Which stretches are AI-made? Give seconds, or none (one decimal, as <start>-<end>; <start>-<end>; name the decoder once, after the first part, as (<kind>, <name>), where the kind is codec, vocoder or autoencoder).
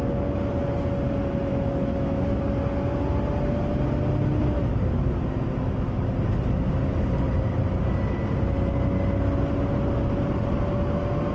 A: 1.5-2.4 (autoencoder, DAC-VAE)